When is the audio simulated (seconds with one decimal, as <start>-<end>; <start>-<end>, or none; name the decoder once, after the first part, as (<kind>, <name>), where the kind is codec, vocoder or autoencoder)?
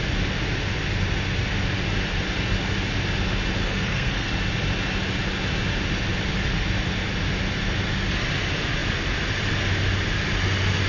3.6-4.3 (codec, SNAC)